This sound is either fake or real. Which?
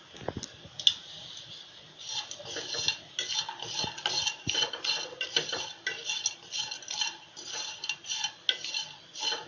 real